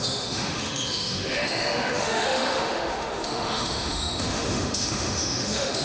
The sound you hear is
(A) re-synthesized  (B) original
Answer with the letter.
A